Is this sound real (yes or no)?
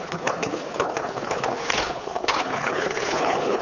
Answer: no